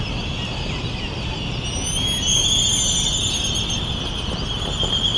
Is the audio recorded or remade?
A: recorded